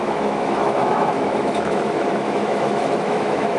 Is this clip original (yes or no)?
no